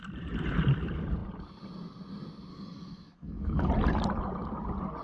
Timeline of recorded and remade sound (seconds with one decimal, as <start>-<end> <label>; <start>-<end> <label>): 0.0-2.5 recorded; 2.5-3.7 remade; 3.7-5.0 recorded